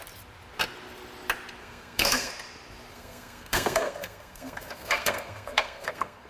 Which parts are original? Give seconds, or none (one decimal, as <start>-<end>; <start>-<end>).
0.0-1.6; 2.3-2.9